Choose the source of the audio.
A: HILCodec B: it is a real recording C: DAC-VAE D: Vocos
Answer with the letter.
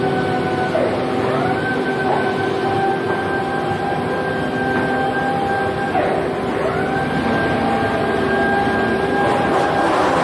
B